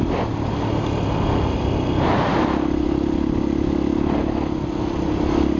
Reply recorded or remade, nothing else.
recorded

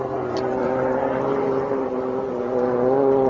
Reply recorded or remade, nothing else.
recorded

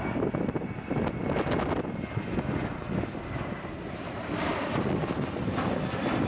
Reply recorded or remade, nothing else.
recorded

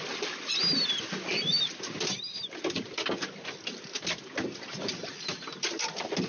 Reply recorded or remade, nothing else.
recorded